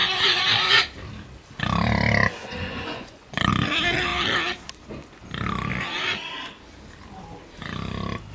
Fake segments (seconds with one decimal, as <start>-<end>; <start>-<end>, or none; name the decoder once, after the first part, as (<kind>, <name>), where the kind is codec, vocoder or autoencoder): 2.4-3.5 (vocoder, Vocos)